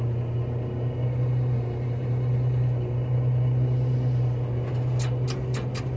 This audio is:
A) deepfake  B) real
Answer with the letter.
B